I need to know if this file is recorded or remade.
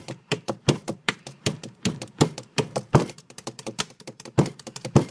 remade